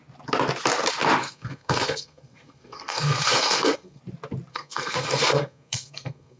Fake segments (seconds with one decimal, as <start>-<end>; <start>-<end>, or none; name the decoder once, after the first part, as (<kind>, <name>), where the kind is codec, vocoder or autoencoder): 1.2-4.0 (codec, SNAC); 4.5-6.4